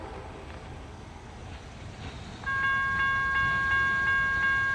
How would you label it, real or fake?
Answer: real